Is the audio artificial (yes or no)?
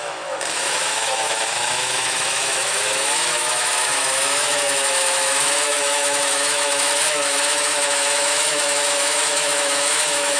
yes